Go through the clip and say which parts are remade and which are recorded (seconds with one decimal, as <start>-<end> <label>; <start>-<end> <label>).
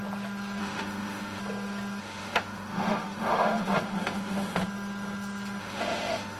0.0-0.6 recorded; 0.6-1.4 remade; 1.4-2.0 recorded; 2.0-4.6 remade; 4.6-5.6 recorded; 5.6-6.4 remade